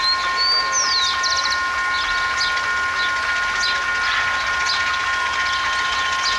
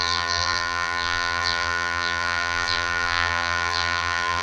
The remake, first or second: second